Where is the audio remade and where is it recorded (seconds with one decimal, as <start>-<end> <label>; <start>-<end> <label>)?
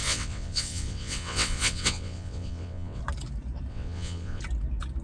0.0-3.0 remade; 3.0-3.7 recorded; 3.7-4.4 remade; 4.4-5.0 recorded